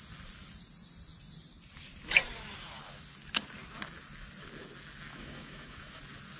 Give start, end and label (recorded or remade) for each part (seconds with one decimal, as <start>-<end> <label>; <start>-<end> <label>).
0.0-5.1 recorded; 5.1-6.0 remade; 6.0-6.4 recorded